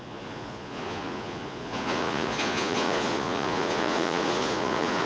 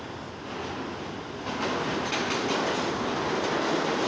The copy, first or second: first